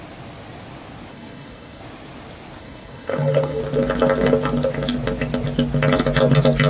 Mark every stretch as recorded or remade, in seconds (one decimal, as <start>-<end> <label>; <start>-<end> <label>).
0.0-1.1 recorded; 1.1-1.8 remade; 1.8-2.6 recorded; 2.6-3.6 remade; 3.6-6.7 recorded